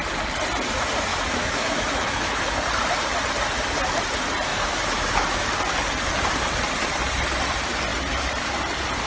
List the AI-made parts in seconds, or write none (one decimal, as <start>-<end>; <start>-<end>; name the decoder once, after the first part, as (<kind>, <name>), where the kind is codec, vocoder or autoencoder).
1.1-2.4 (autoencoder, DAC-VAE); 4.5-5.5